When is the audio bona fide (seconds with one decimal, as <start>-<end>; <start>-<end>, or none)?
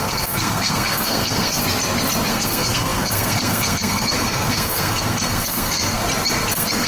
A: 1.6-2.3; 6.0-6.5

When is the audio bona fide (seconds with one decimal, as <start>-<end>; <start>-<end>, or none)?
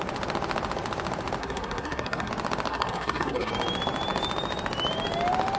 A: 0.0-1.4; 2.3-2.7; 3.5-5.6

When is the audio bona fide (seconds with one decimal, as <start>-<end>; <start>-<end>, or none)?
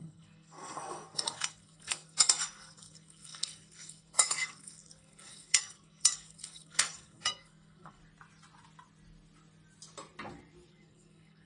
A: 8.0-10.7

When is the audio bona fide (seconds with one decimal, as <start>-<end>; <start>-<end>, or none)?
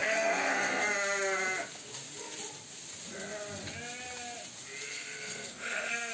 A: 0.8-4.9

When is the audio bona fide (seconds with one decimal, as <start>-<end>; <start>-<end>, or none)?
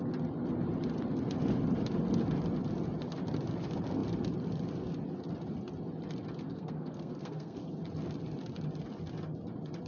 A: 0.0-6.5; 7.6-9.9